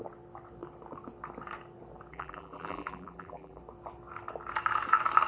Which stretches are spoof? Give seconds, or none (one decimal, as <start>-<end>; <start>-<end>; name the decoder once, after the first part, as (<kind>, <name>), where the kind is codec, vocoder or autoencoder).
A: 2.1-3.6 (vocoder, BigVGAN v2)